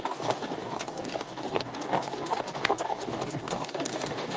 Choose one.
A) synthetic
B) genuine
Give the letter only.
A